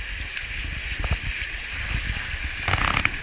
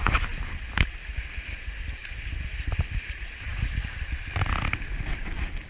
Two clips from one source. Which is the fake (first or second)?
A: second